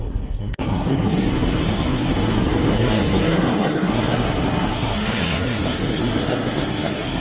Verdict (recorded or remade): remade